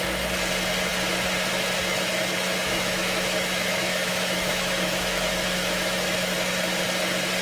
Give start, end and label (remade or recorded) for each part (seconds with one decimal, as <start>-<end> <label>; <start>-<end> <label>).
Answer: 0.0-1.9 recorded; 1.9-6.3 remade; 6.3-7.4 recorded